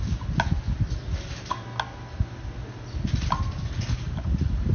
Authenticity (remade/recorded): recorded